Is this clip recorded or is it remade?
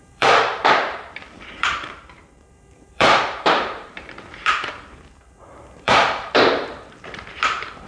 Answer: remade